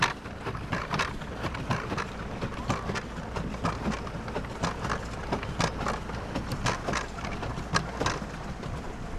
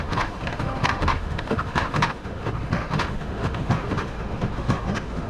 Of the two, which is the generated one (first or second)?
second